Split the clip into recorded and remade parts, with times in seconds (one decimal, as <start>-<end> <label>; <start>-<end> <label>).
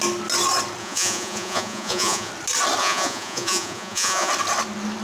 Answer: 0.0-0.8 recorded; 0.8-2.3 remade; 2.3-2.8 recorded; 2.8-4.3 remade; 4.3-5.0 recorded